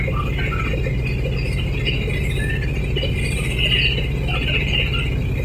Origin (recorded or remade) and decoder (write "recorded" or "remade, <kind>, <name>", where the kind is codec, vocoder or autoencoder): recorded